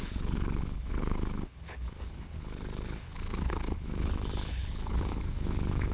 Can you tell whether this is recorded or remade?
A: remade